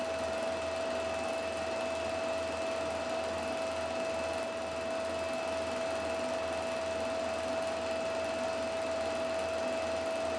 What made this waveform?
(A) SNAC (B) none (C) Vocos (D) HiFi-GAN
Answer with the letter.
B